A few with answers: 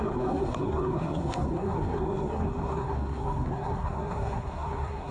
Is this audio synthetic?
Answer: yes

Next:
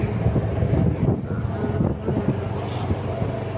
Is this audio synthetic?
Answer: no